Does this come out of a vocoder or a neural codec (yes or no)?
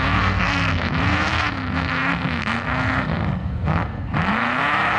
yes